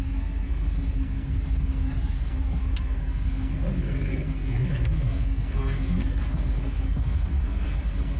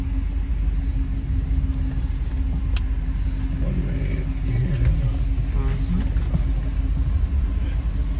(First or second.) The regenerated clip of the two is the first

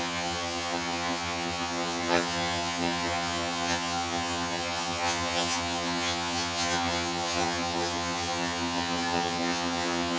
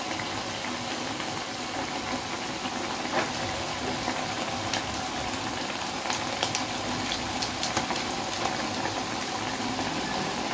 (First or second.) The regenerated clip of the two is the first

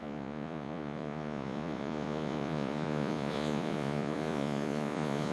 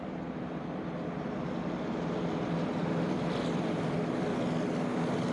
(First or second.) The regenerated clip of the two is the first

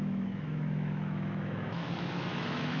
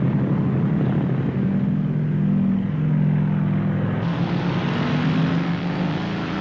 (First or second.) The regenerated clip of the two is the first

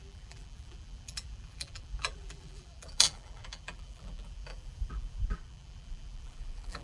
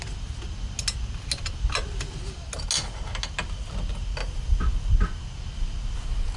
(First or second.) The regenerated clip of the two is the first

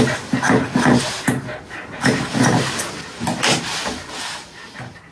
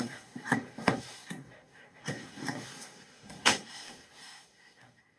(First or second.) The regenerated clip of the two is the second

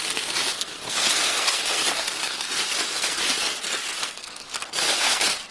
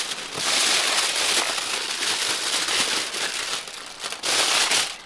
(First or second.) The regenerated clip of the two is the first